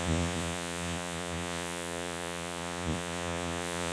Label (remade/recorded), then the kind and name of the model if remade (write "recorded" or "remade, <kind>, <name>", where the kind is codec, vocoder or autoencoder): remade, vocoder, Vocos